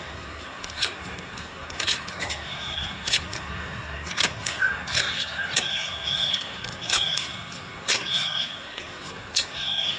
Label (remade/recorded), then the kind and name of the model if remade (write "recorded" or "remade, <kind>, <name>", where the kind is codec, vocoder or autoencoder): remade, codec, SNAC